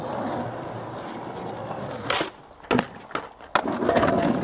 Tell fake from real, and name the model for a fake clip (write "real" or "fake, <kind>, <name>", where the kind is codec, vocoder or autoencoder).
real